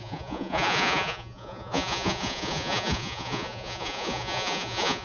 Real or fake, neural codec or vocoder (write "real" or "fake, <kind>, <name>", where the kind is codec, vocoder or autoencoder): fake, vocoder, Vocos